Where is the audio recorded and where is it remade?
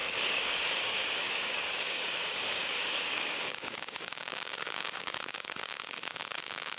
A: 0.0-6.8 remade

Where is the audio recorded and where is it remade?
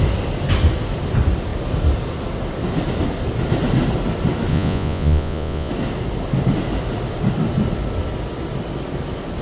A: 0.0-4.5 recorded; 4.5-5.7 remade; 5.7-9.4 recorded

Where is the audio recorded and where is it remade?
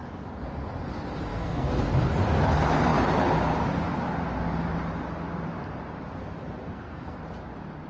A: 0.0-1.3 recorded; 1.3-1.8 remade; 1.8-6.6 recorded; 6.6-7.2 remade; 7.2-7.9 recorded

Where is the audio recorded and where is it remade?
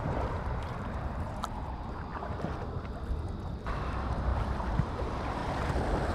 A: 0.0-2.1 remade; 2.1-3.5 recorded; 3.5-4.3 remade; 4.3-4.8 recorded; 4.8-5.4 remade; 5.4-6.1 recorded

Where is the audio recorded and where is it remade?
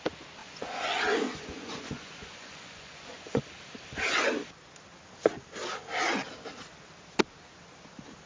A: 0.0-0.4 recorded; 0.4-3.4 remade; 3.4-8.3 recorded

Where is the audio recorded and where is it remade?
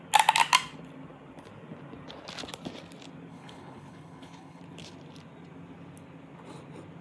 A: 0.0-3.3 recorded; 3.3-4.6 remade; 4.6-7.0 recorded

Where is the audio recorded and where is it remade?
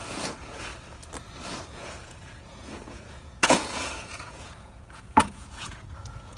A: 0.0-0.7 remade; 0.7-1.7 recorded; 1.7-6.4 remade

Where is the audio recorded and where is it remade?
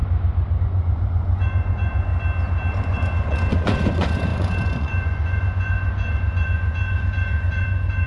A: 0.0-0.6 recorded; 0.6-2.1 remade; 2.1-2.7 recorded; 2.7-8.1 remade